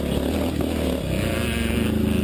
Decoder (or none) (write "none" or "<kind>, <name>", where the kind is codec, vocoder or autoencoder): none